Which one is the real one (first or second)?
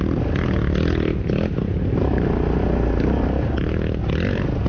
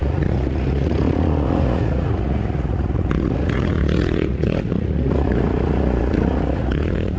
first